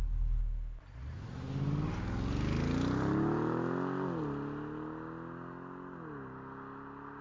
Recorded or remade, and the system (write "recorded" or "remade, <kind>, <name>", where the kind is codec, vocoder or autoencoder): recorded